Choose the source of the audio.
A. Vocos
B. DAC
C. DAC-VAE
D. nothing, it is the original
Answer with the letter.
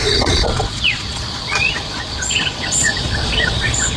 A